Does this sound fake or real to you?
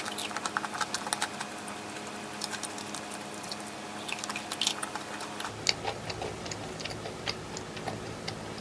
real